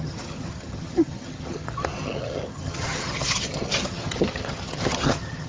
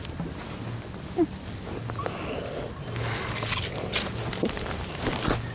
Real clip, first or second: second